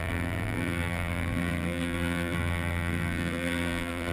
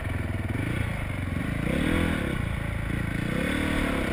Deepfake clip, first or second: first